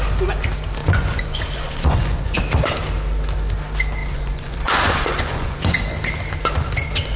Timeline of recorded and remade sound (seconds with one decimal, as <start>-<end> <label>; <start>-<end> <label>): 0.0-0.8 recorded; 0.8-2.4 remade; 2.4-4.0 recorded; 4.0-5.8 remade; 5.8-7.2 recorded